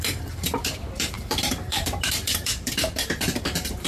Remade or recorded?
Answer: remade